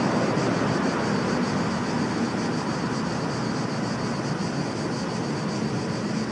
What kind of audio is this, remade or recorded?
recorded